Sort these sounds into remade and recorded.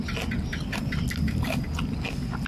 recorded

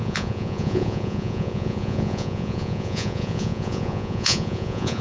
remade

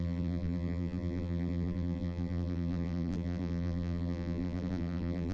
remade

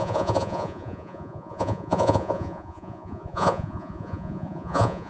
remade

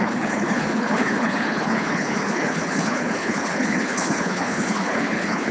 remade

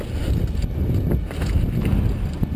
recorded